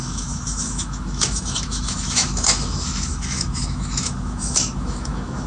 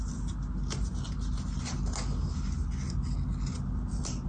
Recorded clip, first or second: second